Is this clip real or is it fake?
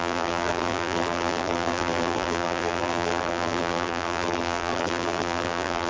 fake